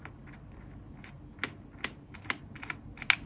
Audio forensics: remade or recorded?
recorded